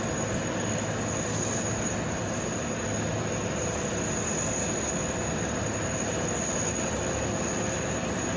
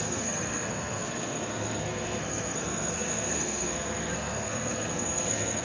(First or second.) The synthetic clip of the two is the second